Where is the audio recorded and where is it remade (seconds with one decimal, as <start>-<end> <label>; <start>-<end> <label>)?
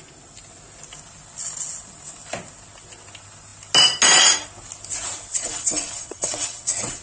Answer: 0.0-5.3 recorded; 5.3-7.0 remade